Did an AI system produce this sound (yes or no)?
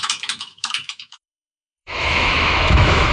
yes